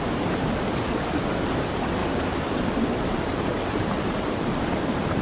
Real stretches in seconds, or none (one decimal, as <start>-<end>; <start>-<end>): 0.0-2.0